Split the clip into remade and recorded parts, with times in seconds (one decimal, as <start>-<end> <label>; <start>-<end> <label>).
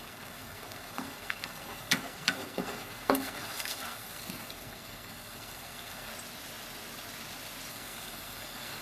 0.0-6.1 remade; 6.1-7.7 recorded; 7.7-8.8 remade